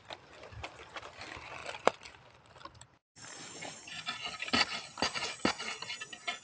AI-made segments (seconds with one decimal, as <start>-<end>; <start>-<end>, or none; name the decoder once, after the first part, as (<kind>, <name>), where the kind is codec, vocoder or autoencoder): none